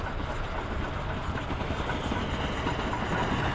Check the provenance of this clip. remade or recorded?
recorded